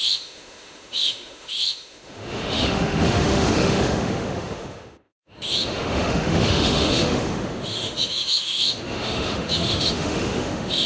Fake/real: fake